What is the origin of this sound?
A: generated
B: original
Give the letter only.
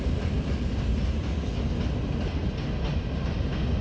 B